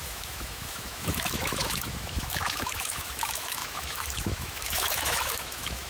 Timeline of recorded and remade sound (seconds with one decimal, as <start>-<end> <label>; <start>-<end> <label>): 0.0-5.9 remade